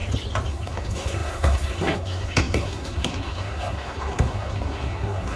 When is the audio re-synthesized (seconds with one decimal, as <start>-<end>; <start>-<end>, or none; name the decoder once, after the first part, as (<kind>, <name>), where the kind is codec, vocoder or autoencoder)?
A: 0.5-5.4 (codec, SNAC)